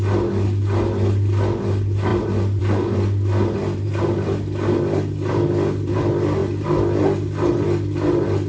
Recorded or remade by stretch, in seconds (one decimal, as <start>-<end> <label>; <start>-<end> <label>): 0.0-8.5 recorded